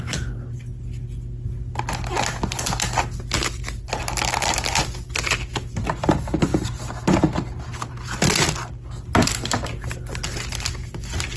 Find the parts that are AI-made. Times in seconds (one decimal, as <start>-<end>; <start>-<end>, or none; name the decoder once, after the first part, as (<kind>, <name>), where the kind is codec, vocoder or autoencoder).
none